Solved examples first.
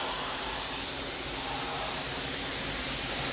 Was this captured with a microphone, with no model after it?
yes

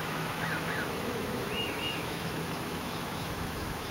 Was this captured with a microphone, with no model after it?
no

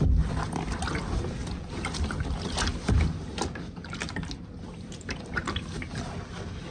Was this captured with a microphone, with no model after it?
yes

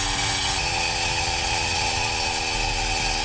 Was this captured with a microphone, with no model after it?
yes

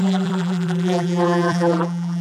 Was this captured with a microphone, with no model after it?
no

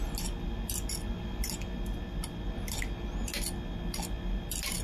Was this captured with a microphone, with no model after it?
yes